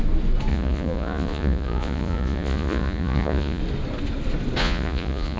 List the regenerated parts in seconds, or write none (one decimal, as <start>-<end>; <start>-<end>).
0.5-3.6; 4.6-5.4